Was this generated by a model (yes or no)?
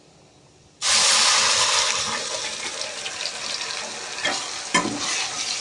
no